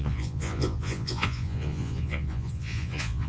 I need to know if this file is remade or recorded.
remade